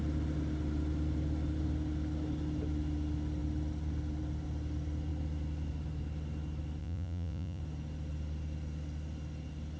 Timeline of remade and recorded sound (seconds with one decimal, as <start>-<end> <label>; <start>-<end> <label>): 0.0-6.8 recorded; 6.8-7.6 remade; 7.6-9.8 recorded